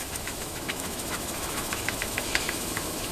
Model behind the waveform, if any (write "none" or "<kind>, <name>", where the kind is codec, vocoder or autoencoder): autoencoder, DAC-VAE